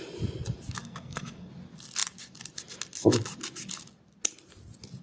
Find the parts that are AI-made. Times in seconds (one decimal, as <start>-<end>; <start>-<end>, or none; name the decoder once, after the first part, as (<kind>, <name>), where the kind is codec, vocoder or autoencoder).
0.8-1.5 (codec, SNAC)